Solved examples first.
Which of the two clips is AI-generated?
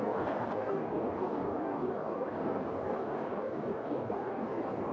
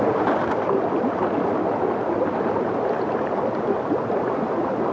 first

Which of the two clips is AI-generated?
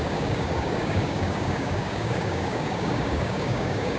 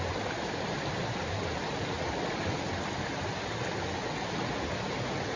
first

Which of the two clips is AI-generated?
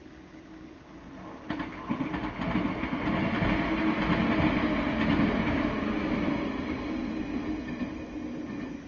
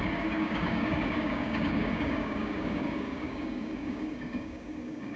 second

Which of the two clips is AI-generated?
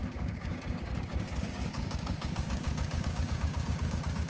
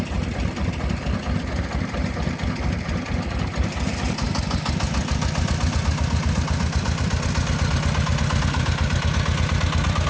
first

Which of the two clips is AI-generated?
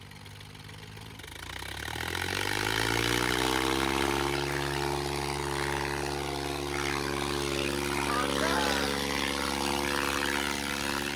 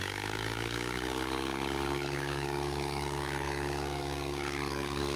second